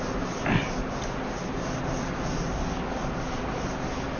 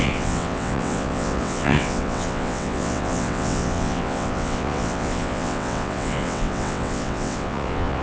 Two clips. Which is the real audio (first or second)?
first